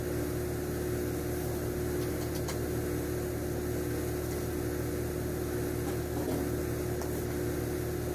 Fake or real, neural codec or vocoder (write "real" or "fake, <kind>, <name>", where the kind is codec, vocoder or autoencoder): real